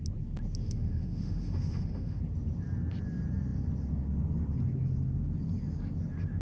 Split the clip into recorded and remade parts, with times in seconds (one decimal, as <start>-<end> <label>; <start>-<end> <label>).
0.0-0.6 recorded; 0.6-2.2 remade; 2.2-6.4 recorded